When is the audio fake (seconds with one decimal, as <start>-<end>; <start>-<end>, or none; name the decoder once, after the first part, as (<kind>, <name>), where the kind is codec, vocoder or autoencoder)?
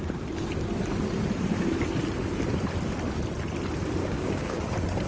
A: 4.0-4.6 (codec, DAC)